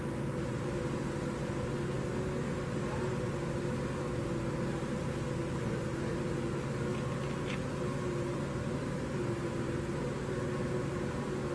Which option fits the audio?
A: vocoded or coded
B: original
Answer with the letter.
B